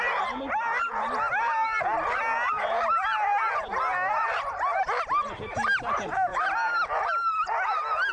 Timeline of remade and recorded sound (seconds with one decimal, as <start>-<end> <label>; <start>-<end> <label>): 0.0-8.1 recorded